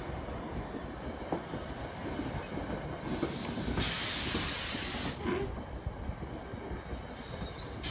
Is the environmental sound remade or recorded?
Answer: recorded